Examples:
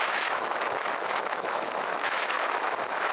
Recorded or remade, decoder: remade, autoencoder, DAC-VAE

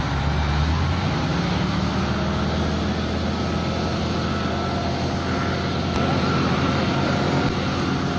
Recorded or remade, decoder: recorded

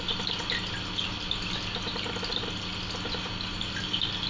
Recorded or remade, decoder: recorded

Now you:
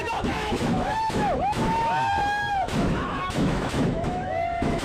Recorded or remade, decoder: remade, autoencoder, DAC-VAE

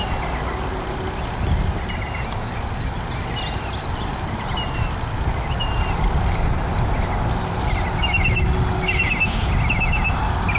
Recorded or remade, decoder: recorded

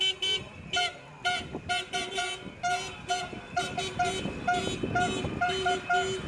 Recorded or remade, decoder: recorded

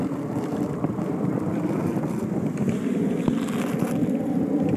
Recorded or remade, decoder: recorded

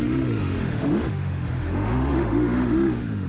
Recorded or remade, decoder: remade, autoencoder, DAC-VAE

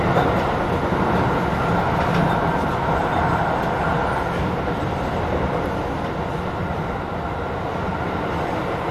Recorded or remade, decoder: recorded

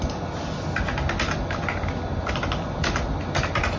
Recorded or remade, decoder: recorded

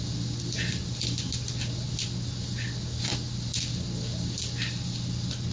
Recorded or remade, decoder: recorded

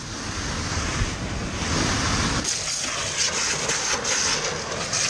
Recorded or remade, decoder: recorded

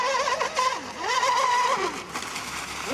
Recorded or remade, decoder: recorded